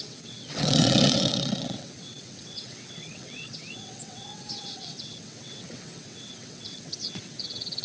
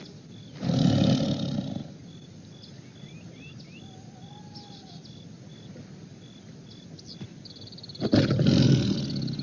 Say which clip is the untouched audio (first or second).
second